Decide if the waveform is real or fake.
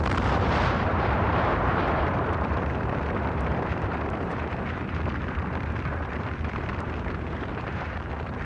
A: fake